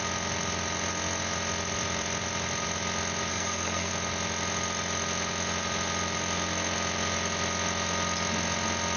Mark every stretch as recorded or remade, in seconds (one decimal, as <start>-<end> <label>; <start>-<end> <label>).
0.0-3.3 recorded; 3.3-3.9 remade; 3.9-9.0 recorded